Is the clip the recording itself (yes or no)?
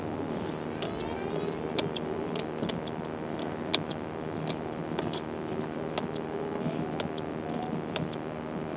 yes